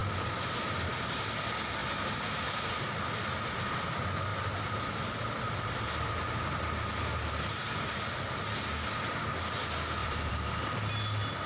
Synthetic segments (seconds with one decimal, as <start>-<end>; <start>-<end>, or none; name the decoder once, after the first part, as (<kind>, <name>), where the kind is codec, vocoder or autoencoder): 0.0-1.4 (vocoder, BigVGAN v2); 10.0-10.9